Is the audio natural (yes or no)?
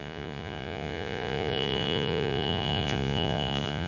no